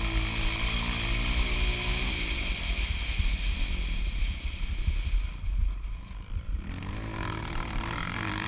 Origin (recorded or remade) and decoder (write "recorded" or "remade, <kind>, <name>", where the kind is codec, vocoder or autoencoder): recorded